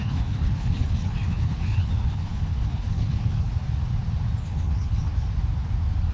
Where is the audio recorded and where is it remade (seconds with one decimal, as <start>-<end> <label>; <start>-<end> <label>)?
0.0-3.5 remade; 3.5-4.4 recorded; 4.4-5.1 remade; 5.1-6.1 recorded